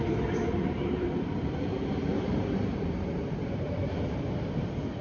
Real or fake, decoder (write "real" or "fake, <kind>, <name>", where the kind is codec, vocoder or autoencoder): fake, vocoder, BigVGAN v2